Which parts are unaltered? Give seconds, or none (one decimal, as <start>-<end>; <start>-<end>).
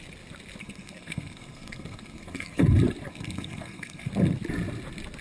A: 0.0-0.6; 2.6-3.1; 4.1-5.2